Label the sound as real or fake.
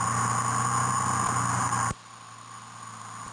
real